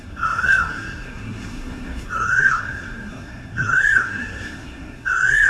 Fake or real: fake